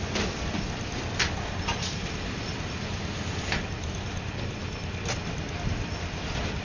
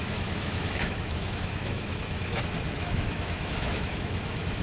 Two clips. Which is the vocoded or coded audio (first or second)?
second